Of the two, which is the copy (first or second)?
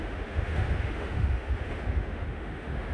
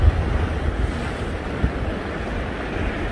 first